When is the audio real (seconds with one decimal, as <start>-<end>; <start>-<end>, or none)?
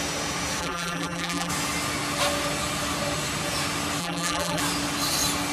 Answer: 0.0-0.6; 1.5-4.0; 4.6-5.5